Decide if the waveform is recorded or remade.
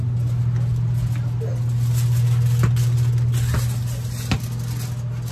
recorded